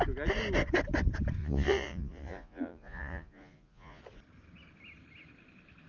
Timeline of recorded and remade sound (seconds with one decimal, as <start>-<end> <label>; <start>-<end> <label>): 0.0-1.4 recorded; 1.4-4.0 remade; 4.0-5.9 recorded